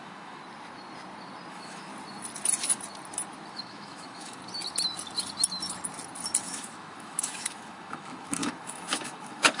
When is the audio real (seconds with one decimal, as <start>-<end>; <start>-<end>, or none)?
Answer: 0.4-1.5; 1.9-3.5; 4.4-6.4